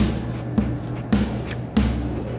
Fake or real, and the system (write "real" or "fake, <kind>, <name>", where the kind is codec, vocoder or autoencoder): real